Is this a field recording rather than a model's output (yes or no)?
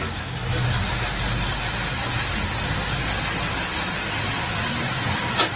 yes